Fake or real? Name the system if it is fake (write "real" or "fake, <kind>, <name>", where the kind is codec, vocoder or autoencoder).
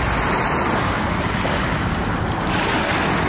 real